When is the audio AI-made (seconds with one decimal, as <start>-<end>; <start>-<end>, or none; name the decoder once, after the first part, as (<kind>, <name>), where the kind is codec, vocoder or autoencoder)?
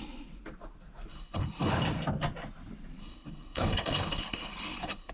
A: 1.1-1.7 (codec, HILCodec); 3.0-5.1